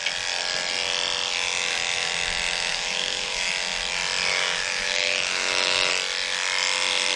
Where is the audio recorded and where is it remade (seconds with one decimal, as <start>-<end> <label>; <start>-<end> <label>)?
0.0-2.7 recorded; 2.7-3.5 remade; 3.5-4.3 recorded; 4.3-5.9 remade; 5.9-7.2 recorded